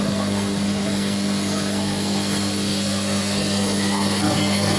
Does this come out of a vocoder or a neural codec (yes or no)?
yes